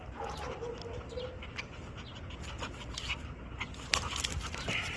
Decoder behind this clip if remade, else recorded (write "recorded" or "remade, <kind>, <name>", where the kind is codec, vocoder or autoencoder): recorded